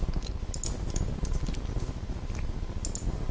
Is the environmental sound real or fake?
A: real